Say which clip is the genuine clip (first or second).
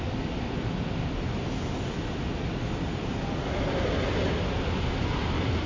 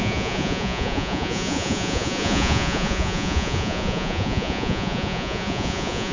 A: first